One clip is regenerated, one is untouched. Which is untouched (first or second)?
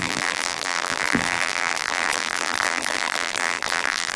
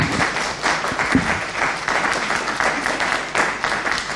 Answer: second